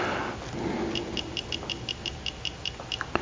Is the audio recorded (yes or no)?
yes